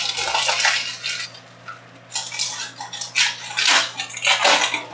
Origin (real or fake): real